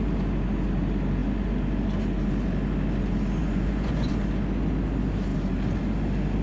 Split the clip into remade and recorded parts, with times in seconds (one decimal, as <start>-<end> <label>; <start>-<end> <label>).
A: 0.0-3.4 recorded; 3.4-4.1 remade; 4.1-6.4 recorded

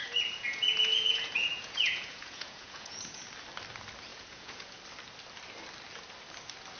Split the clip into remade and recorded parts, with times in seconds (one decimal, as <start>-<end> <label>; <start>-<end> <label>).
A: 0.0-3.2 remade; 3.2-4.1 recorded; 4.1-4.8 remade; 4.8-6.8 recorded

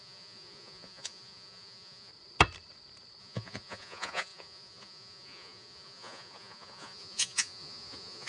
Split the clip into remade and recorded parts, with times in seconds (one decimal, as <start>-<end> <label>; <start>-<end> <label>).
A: 0.0-2.1 remade; 2.1-3.2 recorded; 3.2-8.3 remade

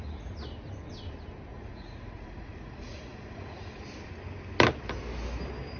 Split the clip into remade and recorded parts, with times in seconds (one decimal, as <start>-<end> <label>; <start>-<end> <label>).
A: 0.0-1.5 recorded; 1.5-3.8 remade; 3.8-5.8 recorded